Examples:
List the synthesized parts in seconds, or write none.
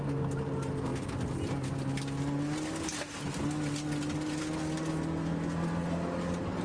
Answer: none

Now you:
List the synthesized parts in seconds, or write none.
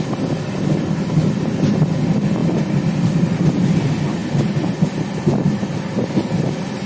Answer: 2.4-3.4 (vocoder, BigVGAN v2)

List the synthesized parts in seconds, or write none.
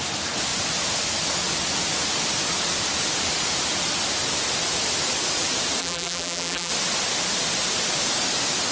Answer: 5.8-6.7 (vocoder, BigVGAN v2)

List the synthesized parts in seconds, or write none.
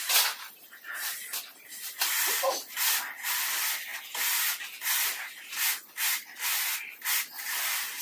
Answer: 0.0-3.9 (vocoder, BigVGAN v2); 7.2-8.0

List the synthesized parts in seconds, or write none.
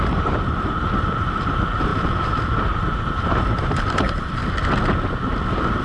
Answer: 0.0-4.4 (vocoder, BigVGAN v2)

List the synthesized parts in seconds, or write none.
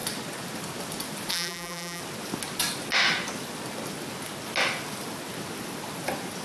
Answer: 1.3-2.0 (vocoder, BigVGAN v2)